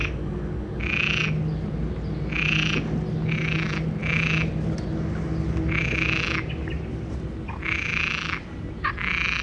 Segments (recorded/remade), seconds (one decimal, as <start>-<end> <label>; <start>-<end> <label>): 0.0-0.8 remade; 0.8-9.4 recorded